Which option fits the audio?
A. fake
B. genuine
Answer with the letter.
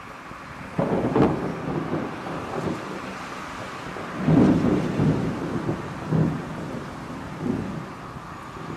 B